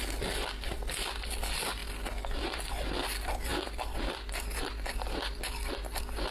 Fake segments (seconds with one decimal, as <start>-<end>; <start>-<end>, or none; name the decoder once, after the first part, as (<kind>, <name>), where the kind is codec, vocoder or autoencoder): none